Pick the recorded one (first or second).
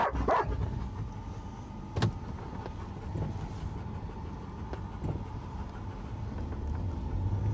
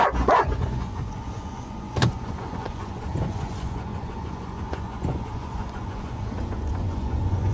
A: first